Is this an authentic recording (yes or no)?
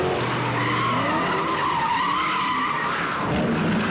yes